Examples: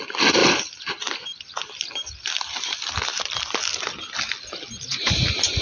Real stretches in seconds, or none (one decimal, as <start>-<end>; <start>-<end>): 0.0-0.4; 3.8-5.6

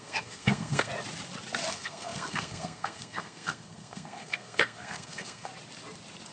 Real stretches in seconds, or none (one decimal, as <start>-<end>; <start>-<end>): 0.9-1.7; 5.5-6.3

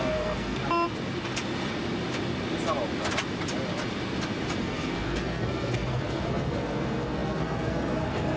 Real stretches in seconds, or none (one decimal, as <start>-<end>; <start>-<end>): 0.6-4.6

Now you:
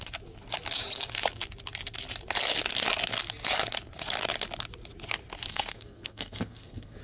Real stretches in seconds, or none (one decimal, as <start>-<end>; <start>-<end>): 0.0-5.5